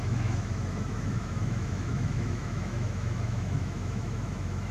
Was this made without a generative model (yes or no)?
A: no